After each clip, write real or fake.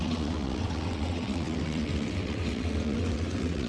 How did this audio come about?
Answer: fake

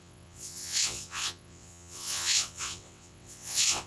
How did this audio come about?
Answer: fake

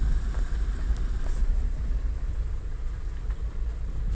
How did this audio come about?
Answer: real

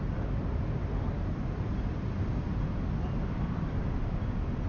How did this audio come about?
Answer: real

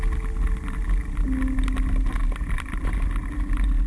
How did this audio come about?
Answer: real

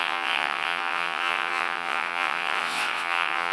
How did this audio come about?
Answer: fake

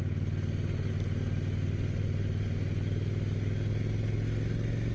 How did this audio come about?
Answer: real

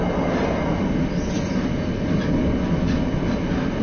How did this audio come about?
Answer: real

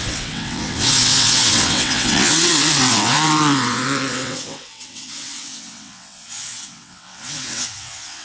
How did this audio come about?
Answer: fake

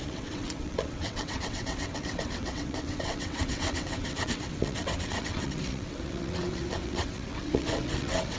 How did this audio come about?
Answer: fake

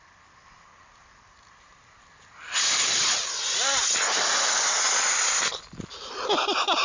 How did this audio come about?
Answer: real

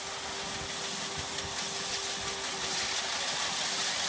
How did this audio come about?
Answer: real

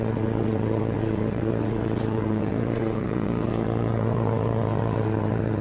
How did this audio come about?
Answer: fake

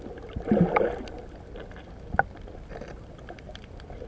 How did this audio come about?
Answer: real